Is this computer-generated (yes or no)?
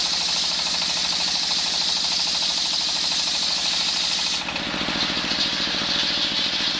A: no